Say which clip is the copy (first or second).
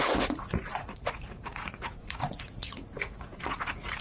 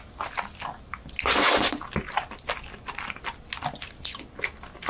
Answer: first